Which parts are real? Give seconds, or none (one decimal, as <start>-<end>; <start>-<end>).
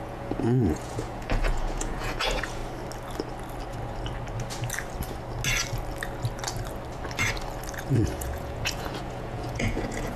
2.6-7.8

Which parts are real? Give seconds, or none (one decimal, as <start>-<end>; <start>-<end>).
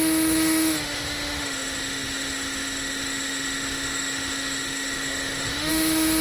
none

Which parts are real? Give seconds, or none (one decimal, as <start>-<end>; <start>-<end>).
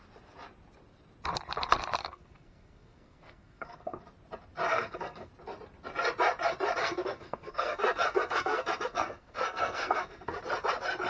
0.0-2.0; 4.0-4.7; 5.3-6.8; 10.4-11.1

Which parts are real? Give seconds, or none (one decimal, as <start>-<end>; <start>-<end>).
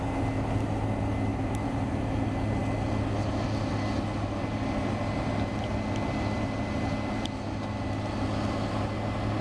0.0-1.3; 2.0-9.4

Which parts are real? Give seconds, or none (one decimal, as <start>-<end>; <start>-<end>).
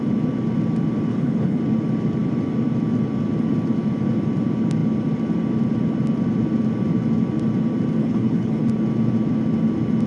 0.0-1.1; 1.6-8.0; 8.7-10.1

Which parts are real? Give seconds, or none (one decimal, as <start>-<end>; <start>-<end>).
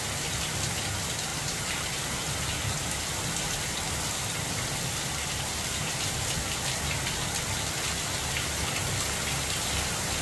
0.0-1.3; 1.9-10.2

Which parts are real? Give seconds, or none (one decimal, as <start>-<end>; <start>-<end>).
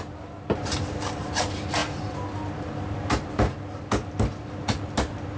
0.0-5.4